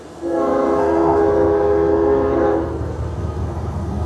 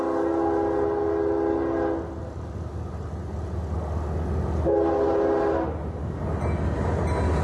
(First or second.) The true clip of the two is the second